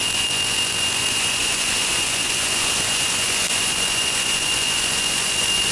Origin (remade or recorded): remade